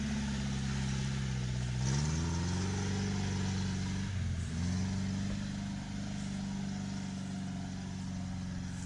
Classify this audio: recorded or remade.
recorded